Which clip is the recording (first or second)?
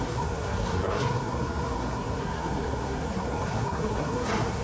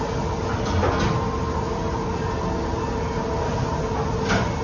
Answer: second